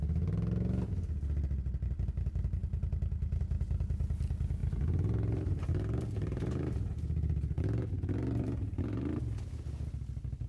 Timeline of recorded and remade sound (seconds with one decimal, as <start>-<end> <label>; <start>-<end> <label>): 0.0-4.6 recorded; 4.6-9.2 remade; 9.2-10.5 recorded